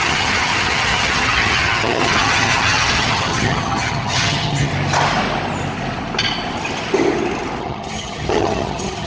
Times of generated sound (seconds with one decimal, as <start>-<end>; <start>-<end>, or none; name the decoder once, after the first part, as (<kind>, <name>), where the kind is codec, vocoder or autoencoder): 0.0-4.7 (vocoder, HiFi-GAN); 7.6-9.1